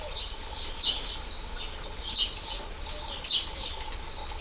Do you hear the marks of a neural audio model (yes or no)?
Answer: no